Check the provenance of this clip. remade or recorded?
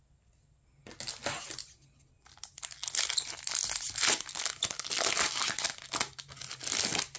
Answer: recorded